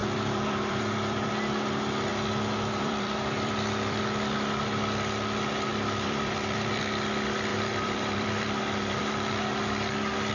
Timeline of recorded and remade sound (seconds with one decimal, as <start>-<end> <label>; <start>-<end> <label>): 0.0-1.3 remade; 1.3-2.1 recorded; 2.1-4.0 remade; 4.0-5.7 recorded; 5.7-6.8 remade; 6.8-7.5 recorded; 7.5-9.0 remade; 9.0-10.3 recorded